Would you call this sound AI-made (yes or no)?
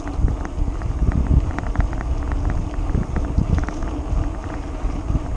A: no